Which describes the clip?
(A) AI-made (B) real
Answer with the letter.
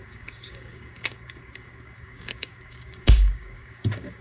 A